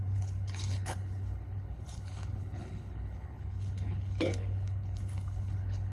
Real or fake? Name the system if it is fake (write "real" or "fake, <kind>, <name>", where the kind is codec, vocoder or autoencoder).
fake, codec, HILCodec